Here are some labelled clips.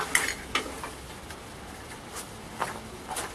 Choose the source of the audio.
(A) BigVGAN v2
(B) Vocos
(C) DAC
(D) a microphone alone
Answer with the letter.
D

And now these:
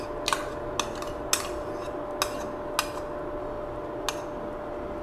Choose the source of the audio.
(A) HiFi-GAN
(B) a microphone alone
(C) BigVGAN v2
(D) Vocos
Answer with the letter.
B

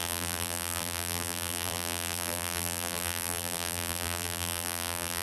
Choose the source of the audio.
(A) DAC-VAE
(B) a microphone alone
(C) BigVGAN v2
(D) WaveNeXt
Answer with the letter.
C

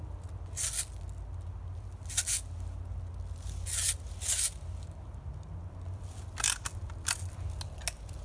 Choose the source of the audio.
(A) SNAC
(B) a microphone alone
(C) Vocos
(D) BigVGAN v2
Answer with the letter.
B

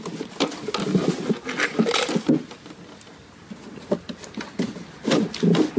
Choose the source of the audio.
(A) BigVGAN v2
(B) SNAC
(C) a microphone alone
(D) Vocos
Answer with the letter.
C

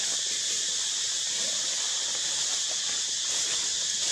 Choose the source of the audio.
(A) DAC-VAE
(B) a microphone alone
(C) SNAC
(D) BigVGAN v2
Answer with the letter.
B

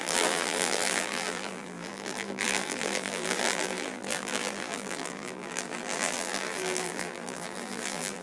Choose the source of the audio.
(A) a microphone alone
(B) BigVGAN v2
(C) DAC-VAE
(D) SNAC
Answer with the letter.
B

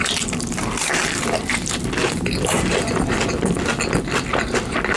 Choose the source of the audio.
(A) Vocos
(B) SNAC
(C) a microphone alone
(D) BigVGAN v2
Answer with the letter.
D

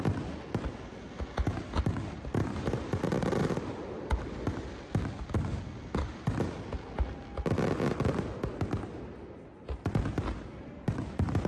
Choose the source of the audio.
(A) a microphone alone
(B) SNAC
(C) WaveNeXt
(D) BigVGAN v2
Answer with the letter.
A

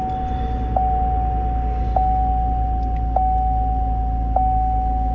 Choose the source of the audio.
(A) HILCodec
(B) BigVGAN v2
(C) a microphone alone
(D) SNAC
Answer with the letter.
C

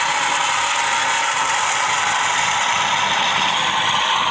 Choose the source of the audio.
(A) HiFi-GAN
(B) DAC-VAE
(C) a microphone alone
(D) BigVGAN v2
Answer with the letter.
D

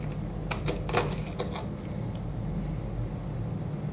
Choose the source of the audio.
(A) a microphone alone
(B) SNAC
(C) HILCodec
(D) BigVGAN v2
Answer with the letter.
A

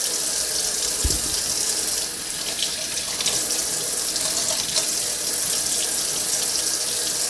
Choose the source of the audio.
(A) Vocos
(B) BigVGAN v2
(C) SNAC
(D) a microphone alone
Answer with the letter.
D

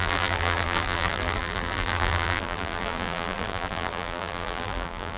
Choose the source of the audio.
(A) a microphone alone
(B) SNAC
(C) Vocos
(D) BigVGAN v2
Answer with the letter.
D